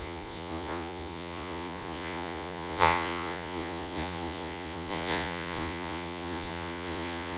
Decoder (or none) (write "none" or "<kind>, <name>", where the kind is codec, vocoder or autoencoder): vocoder, Vocos